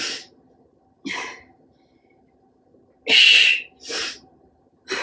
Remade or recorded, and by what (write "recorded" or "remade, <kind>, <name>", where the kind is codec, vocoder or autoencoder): recorded